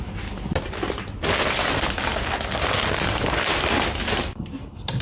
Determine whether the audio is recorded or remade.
recorded